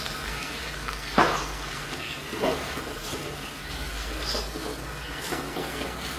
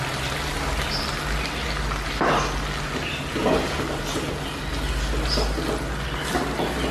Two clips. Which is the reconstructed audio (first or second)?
first